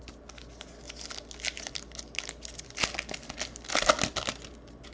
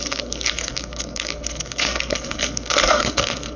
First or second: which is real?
first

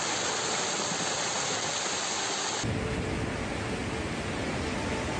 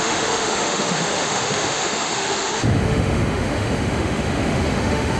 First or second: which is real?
first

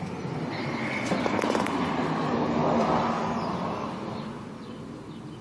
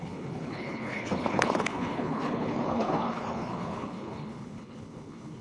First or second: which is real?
first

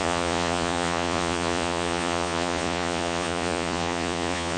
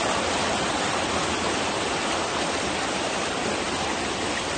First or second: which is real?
second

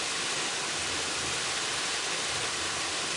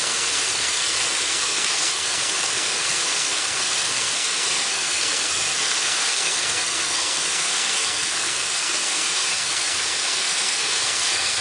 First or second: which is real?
first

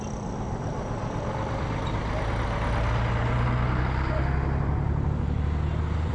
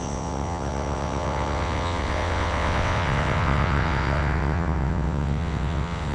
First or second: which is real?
first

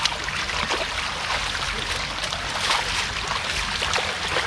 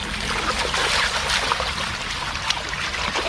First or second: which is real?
first